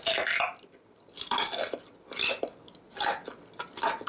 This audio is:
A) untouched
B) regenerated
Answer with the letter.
A